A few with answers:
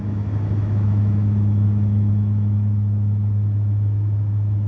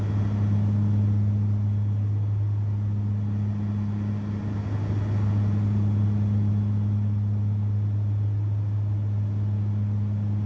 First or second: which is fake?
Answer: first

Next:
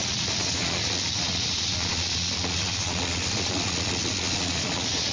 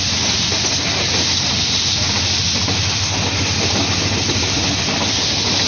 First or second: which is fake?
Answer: first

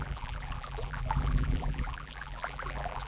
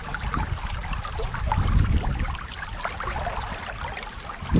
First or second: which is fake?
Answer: first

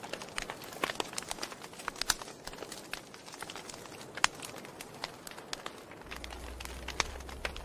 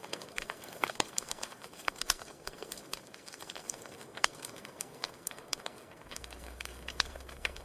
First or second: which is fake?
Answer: second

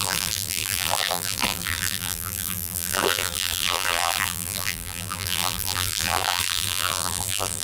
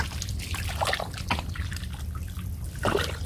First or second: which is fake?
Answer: first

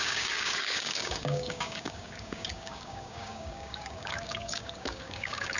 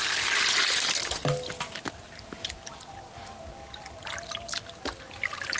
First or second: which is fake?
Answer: first